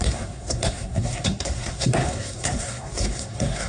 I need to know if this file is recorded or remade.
remade